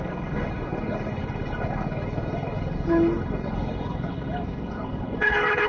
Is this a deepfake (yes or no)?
yes